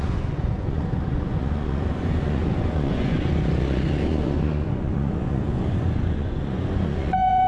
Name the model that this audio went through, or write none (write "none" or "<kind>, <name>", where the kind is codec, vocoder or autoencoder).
vocoder, Vocos